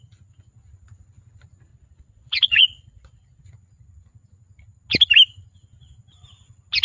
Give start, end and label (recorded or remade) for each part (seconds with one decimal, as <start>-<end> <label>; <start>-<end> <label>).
0.0-1.7 recorded; 1.7-3.4 remade; 3.4-6.8 recorded